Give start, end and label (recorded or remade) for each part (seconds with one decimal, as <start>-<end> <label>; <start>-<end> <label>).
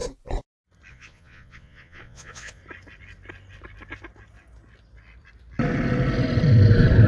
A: 0.0-0.9 recorded; 0.9-2.6 remade; 2.6-7.1 recorded